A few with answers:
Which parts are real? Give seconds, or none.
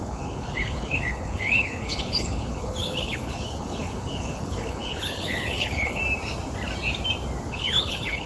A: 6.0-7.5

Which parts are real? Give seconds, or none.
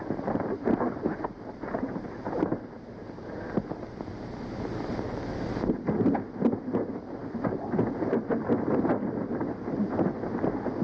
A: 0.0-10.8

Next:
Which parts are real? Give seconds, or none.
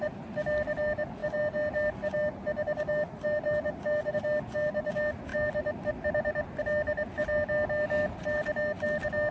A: 0.0-9.3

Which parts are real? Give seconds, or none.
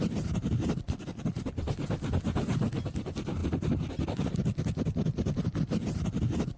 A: 0.0-6.6